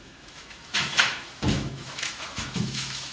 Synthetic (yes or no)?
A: yes